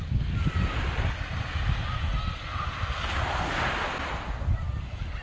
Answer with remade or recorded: recorded